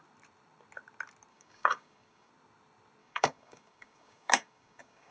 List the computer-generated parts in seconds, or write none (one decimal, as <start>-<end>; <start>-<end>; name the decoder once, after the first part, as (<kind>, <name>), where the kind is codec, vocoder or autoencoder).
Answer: 1.3-2.3 (codec, DAC); 3.0-5.1